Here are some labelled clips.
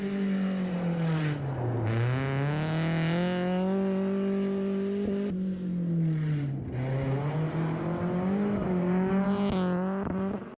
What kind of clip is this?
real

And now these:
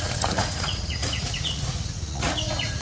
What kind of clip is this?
fake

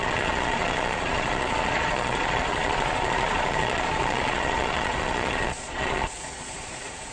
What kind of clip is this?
fake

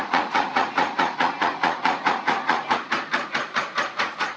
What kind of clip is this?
fake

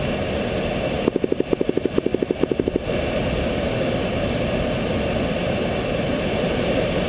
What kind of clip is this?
real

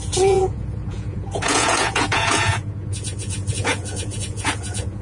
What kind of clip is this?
fake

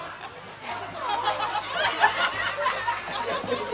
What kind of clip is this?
real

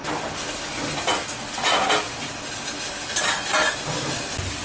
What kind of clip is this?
real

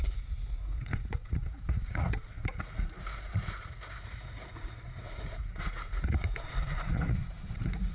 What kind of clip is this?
fake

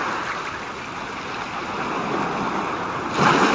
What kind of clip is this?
real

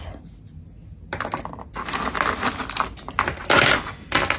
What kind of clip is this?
real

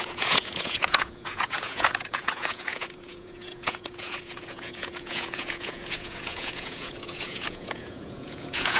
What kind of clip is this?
fake